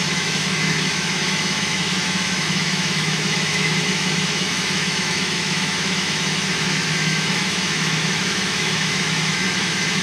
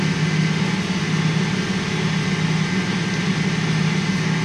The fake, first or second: first